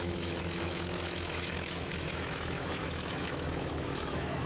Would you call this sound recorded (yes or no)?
no